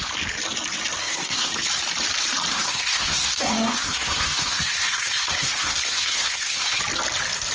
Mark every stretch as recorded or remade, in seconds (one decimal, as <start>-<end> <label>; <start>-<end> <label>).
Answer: 0.0-1.0 recorded; 1.0-1.5 remade; 1.5-2.5 recorded; 2.5-6.8 remade; 6.8-7.5 recorded